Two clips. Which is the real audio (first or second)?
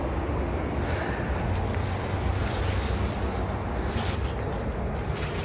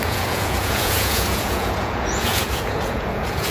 first